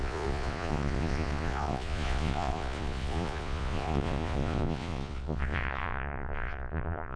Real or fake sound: fake